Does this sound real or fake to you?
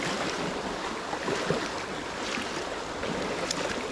real